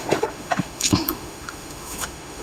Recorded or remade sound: remade